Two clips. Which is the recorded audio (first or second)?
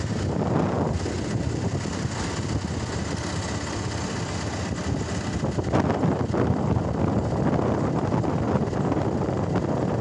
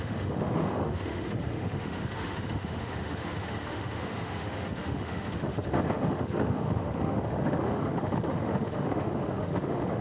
first